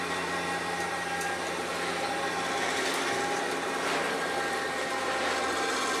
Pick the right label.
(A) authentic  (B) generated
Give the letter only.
A